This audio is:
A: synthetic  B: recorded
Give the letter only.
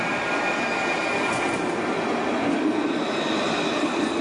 B